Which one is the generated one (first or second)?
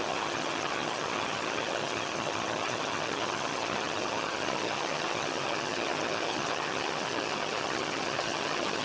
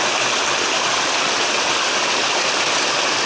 first